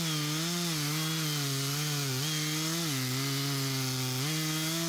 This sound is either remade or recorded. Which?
recorded